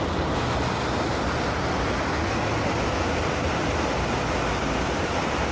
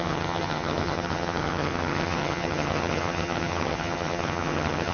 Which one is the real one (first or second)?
first